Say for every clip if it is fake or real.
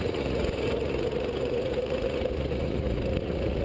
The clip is fake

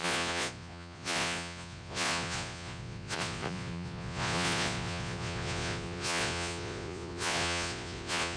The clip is fake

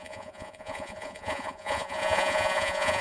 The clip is fake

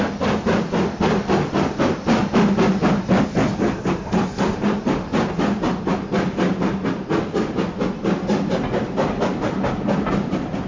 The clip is real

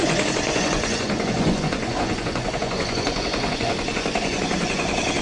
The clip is fake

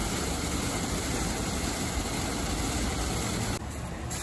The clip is real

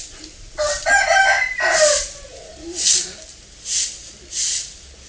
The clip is real